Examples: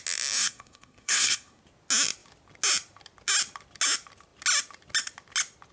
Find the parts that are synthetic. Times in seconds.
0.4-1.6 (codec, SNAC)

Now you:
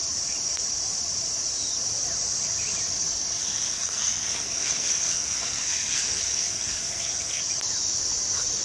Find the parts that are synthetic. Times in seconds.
3.4-7.4 (codec, SNAC)

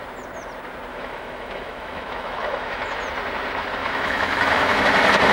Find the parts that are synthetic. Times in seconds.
0.9-3.0 (autoencoder, DAC-VAE); 3.8-4.8